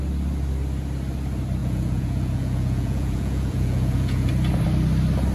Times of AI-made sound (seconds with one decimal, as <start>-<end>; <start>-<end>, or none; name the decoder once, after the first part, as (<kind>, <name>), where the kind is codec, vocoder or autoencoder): 1.6-4.3 (vocoder, Vocos)